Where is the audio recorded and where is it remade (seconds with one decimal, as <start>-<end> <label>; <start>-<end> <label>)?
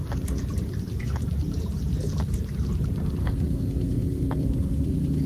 0.0-3.2 recorded; 3.2-5.3 remade